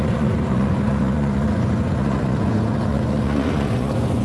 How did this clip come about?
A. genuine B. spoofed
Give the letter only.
B